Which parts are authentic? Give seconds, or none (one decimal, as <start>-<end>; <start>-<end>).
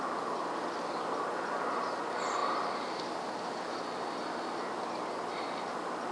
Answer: 0.0-6.1